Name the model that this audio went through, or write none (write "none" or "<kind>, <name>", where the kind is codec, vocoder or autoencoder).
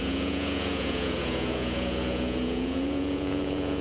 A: vocoder, Vocos